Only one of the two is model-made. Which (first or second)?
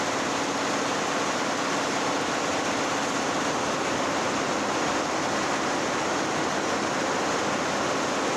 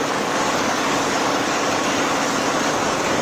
second